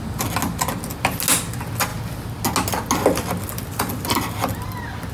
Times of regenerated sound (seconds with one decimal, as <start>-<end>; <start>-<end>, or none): none